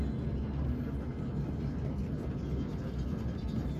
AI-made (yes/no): no